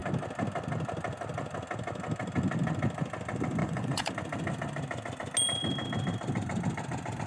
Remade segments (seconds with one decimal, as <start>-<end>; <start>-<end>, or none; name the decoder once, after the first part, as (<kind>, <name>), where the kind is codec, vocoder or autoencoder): 3.6-4.1 (vocoder, Vocos)